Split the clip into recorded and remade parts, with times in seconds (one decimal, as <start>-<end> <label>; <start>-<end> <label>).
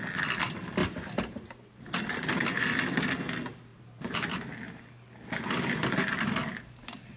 0.0-0.8 recorded; 0.8-1.8 remade; 1.8-3.7 recorded; 3.7-4.3 remade; 4.3-7.2 recorded